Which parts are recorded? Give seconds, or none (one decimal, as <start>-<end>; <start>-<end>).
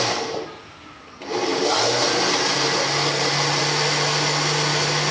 0.0-5.1